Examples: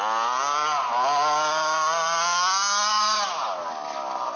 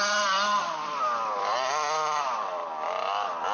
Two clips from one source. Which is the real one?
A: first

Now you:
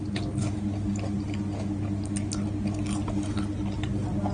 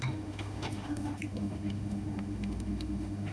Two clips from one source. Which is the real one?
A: first